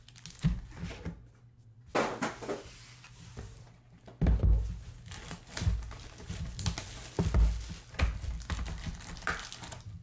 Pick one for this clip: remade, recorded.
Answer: recorded